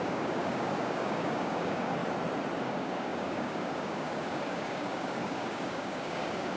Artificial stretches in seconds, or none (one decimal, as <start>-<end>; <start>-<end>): 0.0-2.0; 2.6-6.6